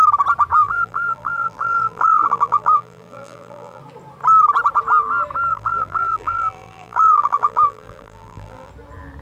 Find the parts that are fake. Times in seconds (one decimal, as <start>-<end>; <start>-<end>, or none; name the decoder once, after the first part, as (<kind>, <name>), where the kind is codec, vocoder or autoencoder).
0.6-3.8 (vocoder, BigVGAN v2); 5.5-8.7